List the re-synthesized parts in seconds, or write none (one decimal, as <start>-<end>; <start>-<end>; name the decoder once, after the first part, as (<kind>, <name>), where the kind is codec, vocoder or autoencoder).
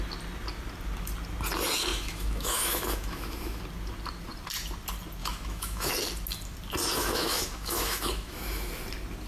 1.9-3.6 (autoencoder, DAC-VAE); 5.2-5.9; 7.0-8.7